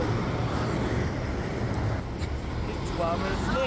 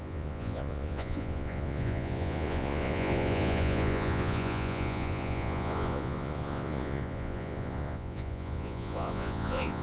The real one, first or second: first